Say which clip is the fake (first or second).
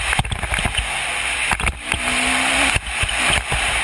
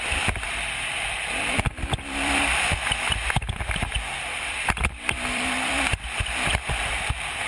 second